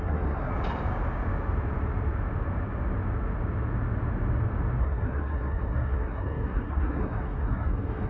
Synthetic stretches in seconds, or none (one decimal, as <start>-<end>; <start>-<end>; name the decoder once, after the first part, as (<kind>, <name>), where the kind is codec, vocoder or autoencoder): 0.0-0.5 (codec, SNAC); 4.8-8.1

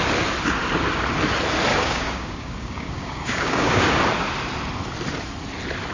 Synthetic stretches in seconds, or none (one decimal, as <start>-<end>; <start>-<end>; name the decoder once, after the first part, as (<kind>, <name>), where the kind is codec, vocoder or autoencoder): 1.7-4.0 (codec, DAC)

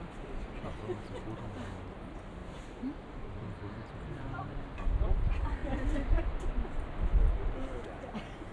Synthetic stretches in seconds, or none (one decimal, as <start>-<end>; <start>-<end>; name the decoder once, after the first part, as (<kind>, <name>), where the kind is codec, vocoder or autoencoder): 2.4-4.5 (vocoder, BigVGAN v2)

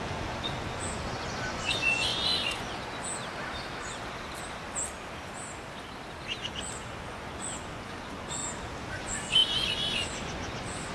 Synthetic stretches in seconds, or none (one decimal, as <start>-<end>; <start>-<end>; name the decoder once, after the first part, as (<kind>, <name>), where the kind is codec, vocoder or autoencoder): 0.0-3.2 (vocoder, Vocos); 6.8-8.4; 8.9-10.9